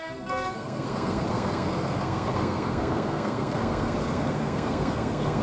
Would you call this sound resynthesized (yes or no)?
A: yes